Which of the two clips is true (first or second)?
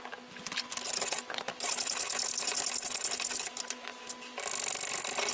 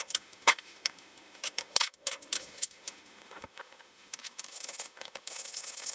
first